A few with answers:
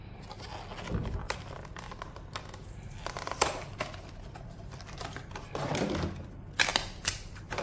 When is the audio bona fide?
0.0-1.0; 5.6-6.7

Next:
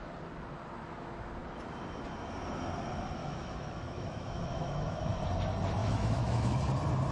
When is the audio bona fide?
0.0-3.2; 5.2-5.8; 6.6-7.1

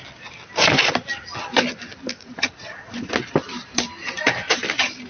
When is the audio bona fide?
0.0-2.1; 3.1-5.1